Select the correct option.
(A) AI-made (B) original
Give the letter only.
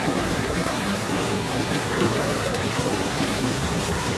A